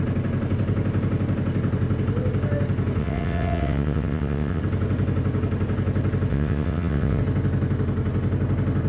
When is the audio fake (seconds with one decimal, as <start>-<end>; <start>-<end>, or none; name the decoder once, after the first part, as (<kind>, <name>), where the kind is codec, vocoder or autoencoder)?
3.0-4.6 (vocoder, WaveNeXt); 6.3-7.2